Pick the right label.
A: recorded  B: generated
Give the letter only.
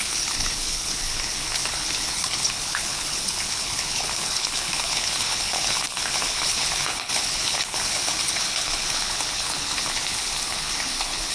B